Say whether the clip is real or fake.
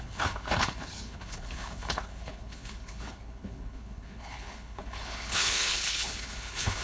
fake